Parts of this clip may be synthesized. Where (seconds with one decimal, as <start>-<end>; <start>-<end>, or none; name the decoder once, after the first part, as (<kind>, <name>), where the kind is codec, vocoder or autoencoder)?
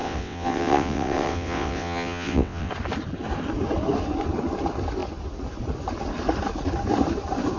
0.0-2.7 (vocoder, WaveNeXt)